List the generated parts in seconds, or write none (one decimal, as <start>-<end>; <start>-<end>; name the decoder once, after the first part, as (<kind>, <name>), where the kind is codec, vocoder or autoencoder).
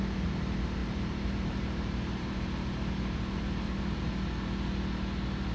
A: 0.8-4.1 (vocoder, BigVGAN v2)